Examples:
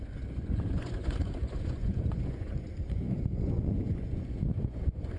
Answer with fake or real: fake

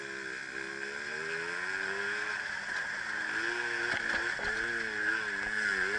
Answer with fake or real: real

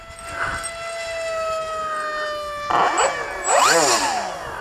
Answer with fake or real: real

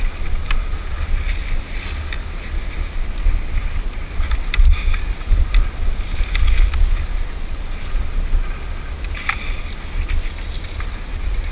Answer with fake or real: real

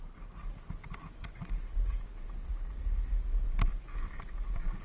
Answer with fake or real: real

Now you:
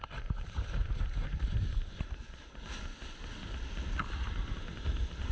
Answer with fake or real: real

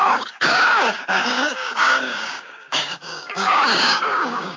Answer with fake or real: fake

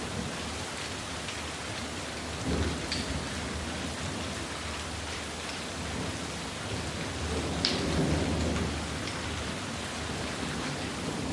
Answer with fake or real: real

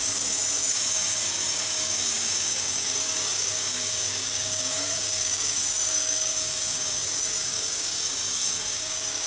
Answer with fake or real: fake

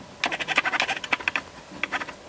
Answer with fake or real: real